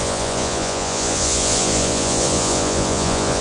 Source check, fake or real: fake